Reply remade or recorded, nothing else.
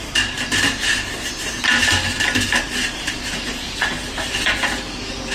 remade